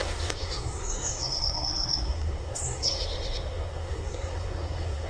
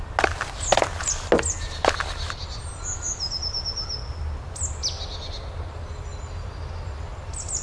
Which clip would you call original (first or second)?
second